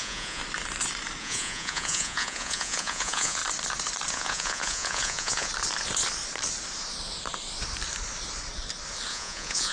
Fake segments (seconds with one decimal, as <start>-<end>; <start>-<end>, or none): 0.0-0.4; 1.2-3.4; 4.1-5.5; 9.1-9.7